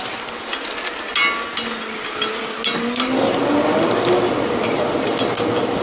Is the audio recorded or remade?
recorded